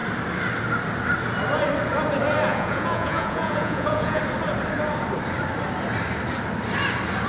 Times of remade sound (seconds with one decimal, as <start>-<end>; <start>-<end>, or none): 2.5-4.2